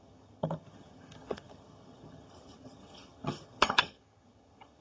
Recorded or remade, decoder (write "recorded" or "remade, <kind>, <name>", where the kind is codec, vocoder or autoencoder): remade, vocoder, HiFi-GAN